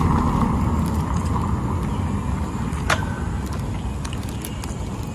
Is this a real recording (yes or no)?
yes